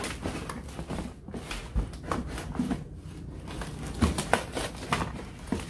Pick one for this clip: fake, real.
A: real